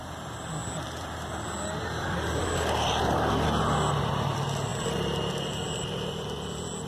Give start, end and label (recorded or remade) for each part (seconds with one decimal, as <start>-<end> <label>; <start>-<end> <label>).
0.0-6.9 recorded